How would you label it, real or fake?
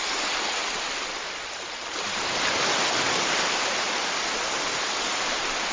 real